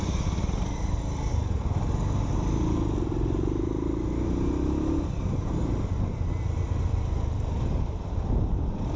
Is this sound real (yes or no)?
yes